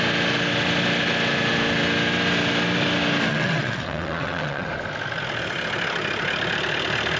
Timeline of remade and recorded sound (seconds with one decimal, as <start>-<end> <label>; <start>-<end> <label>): 0.0-3.3 recorded; 3.3-4.7 remade; 4.7-7.2 recorded